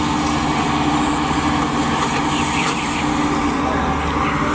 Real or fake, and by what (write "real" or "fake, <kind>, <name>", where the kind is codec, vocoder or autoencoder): real